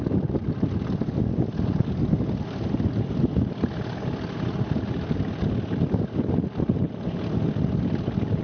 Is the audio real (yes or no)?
yes